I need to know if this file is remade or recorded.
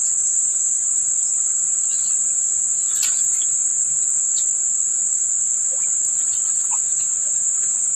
recorded